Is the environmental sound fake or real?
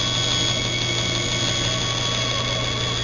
real